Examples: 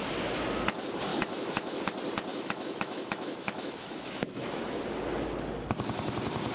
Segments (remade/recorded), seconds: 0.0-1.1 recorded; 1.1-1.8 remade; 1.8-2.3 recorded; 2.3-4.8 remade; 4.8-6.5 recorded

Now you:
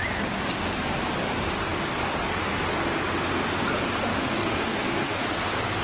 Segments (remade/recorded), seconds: 0.0-4.1 recorded; 4.1-5.2 remade; 5.2-5.8 recorded

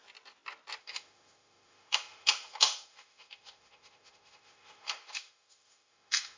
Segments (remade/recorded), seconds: 0.0-0.8 recorded; 0.8-6.4 remade

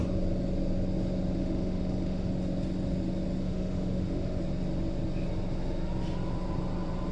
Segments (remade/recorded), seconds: 0.0-1.4 recorded; 1.4-2.3 remade; 2.3-3.4 recorded; 3.4-4.4 remade; 4.4-7.1 recorded

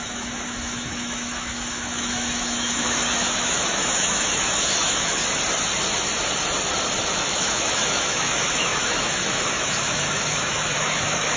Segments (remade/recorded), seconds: 0.0-5.2 remade; 5.2-7.1 recorded; 7.1-11.4 remade

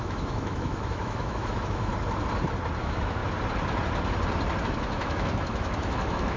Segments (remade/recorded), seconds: 0.0-1.9 remade; 1.9-2.8 recorded; 2.8-3.2 remade; 3.2-4.6 recorded; 4.6-6.4 remade

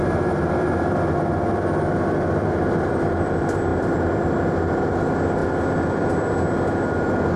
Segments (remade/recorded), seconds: 0.0-7.4 recorded